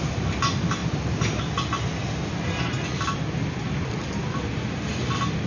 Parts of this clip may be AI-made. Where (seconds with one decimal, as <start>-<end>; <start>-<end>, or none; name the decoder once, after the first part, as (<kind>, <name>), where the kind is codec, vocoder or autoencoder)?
none